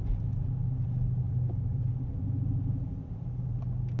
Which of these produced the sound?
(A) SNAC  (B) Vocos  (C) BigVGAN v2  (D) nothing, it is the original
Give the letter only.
D